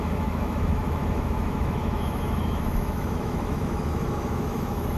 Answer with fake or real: fake